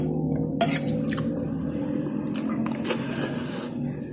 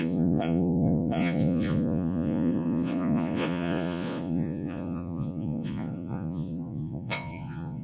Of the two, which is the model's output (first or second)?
second